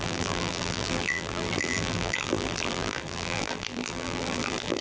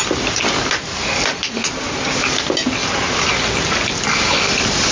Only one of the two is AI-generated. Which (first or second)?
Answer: first